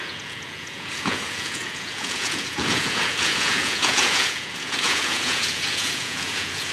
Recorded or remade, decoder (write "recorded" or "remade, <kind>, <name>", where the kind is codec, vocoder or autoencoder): remade, vocoder, Vocos